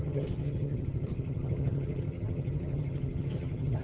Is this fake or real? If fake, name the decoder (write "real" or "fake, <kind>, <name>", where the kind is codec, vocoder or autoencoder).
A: fake, vocoder, HiFi-GAN